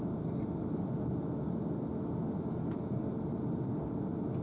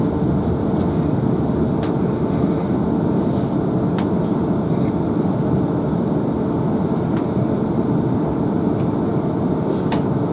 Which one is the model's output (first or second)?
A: second